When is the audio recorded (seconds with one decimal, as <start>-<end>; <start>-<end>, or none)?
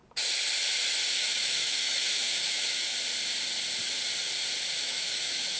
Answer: 0.0-1.1; 2.9-4.8